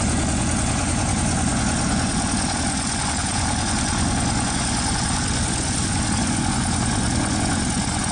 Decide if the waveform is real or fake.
fake